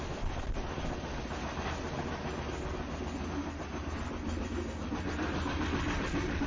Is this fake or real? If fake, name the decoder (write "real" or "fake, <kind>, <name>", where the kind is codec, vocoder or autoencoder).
real